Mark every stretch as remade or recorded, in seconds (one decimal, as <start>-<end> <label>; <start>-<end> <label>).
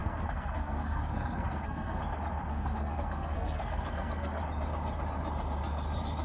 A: 0.0-2.0 remade; 2.0-2.5 recorded; 2.5-4.4 remade; 4.4-6.2 recorded